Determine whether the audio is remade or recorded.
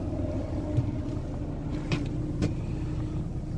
recorded